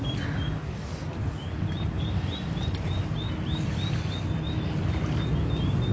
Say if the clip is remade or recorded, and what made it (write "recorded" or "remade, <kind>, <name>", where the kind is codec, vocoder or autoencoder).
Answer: recorded